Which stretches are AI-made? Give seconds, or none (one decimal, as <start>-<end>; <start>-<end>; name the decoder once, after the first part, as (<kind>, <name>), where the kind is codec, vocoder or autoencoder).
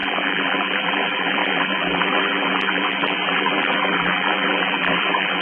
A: 0.0-5.4 (vocoder, BigVGAN v2)